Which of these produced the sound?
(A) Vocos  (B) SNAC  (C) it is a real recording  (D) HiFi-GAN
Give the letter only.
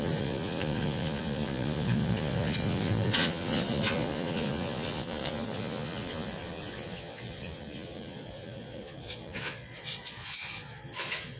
A